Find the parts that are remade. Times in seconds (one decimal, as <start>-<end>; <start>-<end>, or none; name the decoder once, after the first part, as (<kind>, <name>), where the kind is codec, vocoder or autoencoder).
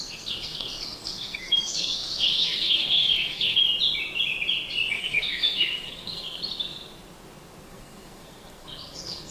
0.0-3.6 (codec, SNAC); 4.9-6.4; 7.6-9.3